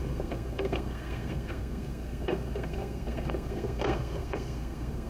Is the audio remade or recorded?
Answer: remade